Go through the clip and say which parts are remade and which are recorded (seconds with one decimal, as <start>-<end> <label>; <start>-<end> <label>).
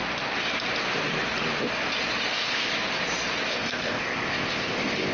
0.0-2.3 recorded; 2.3-2.7 remade; 2.7-3.5 recorded; 3.5-5.1 remade